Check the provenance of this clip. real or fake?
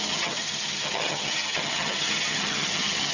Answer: fake